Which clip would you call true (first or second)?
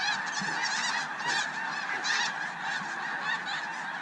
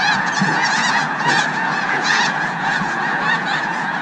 first